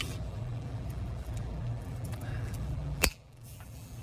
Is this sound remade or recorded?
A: remade